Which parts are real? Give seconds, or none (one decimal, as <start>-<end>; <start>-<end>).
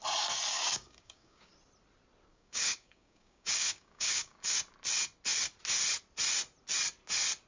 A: 0.0-0.5; 1.5-2.3; 4.5-7.5